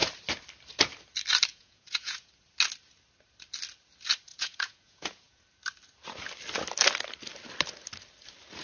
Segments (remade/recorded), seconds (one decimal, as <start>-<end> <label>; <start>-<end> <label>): 0.0-1.5 recorded; 1.5-2.3 remade; 2.3-4.3 recorded; 4.3-5.4 remade; 5.4-8.6 recorded